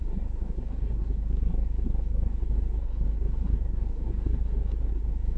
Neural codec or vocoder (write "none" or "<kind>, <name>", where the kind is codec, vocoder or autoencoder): codec, SNAC